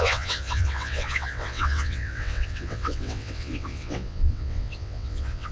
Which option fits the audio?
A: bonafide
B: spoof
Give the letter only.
B